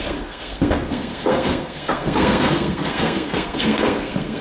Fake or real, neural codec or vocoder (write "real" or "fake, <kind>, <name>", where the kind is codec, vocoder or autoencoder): fake, codec, SNAC